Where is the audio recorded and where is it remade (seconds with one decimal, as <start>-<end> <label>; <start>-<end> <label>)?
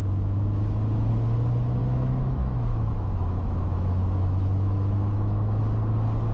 0.0-1.1 remade; 1.1-1.8 recorded; 1.8-5.6 remade; 5.6-6.3 recorded